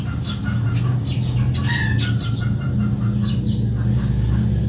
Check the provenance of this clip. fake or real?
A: real